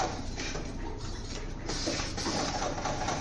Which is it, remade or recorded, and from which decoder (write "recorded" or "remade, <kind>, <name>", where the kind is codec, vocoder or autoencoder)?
remade, vocoder, BigVGAN v2